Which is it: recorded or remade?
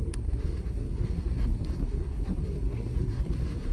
remade